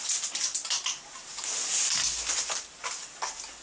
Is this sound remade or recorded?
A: recorded